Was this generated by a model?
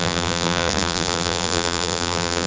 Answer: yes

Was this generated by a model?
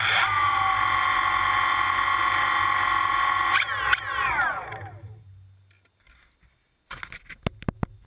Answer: no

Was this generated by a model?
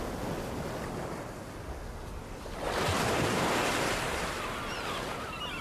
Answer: no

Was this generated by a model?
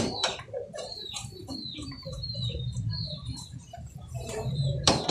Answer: yes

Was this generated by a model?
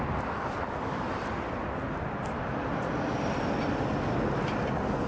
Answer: no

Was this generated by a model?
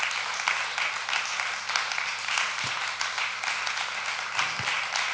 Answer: no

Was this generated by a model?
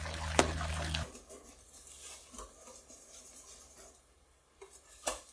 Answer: no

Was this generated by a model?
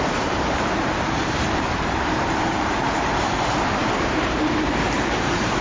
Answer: yes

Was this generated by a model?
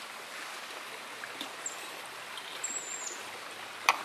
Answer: no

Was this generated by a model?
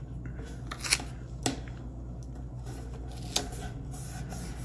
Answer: no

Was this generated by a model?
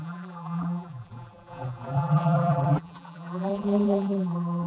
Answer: yes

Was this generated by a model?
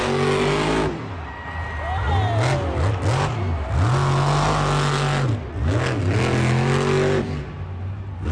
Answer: no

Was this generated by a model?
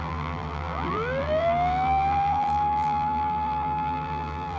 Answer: yes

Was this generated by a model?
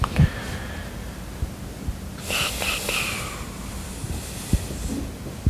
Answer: no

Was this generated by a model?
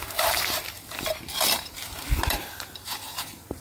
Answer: yes